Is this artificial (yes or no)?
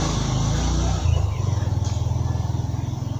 no